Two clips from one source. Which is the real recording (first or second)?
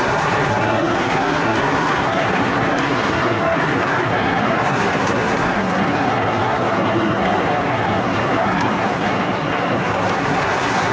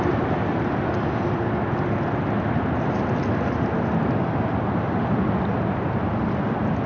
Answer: second